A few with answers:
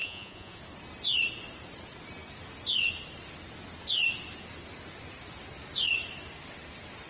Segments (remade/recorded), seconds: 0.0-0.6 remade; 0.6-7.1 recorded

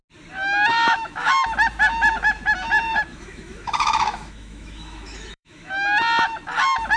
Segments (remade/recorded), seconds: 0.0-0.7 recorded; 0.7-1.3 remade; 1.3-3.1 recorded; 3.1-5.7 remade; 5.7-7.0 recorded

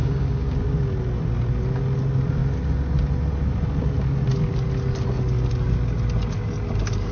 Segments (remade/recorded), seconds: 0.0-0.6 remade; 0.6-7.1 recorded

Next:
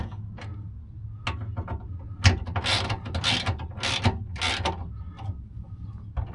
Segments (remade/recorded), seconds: 0.0-6.3 recorded